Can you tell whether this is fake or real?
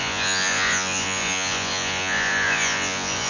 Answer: fake